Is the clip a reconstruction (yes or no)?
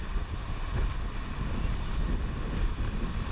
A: no